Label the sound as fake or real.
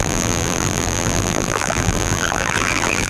fake